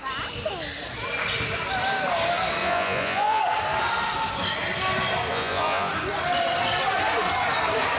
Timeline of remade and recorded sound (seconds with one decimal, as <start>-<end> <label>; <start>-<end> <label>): 0.0-2.6 recorded; 2.6-3.4 remade; 3.4-5.3 recorded; 5.3-5.9 remade; 5.9-8.0 recorded